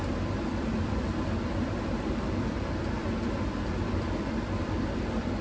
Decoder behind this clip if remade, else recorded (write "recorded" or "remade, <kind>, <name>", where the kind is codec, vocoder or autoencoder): remade, vocoder, BigVGAN v2